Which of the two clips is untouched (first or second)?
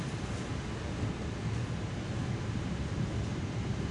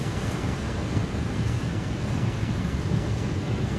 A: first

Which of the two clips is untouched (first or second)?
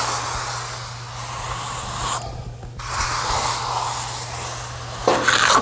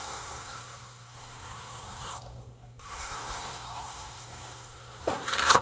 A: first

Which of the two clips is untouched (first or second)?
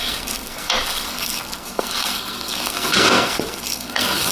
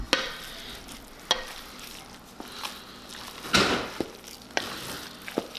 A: second